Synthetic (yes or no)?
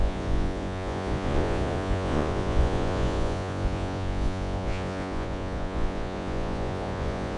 yes